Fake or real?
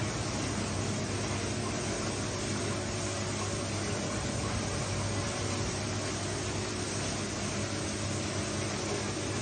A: real